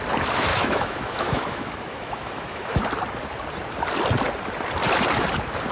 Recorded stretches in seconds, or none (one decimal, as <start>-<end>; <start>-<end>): 0.0-0.5; 2.8-5.7